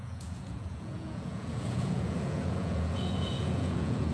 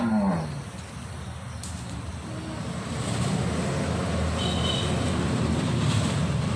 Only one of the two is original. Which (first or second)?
second